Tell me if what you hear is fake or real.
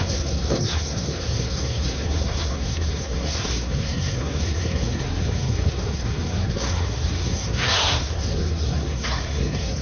fake